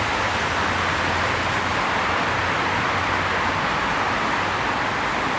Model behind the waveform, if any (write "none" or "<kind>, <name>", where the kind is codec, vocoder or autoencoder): none